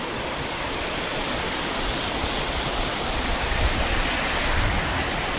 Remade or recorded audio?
recorded